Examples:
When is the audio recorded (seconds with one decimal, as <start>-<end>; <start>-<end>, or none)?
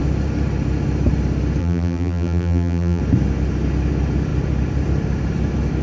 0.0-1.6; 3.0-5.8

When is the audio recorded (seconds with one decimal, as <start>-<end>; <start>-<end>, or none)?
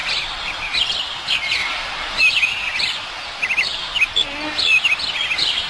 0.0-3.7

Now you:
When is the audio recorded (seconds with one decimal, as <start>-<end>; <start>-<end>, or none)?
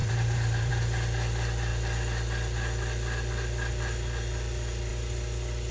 0.7-5.7